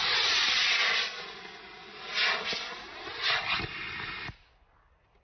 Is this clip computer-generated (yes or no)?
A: no